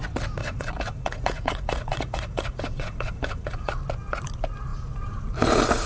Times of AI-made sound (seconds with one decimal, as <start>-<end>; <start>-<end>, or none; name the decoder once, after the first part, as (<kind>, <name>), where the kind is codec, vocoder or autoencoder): 0.4-3.7 (vocoder, Vocos)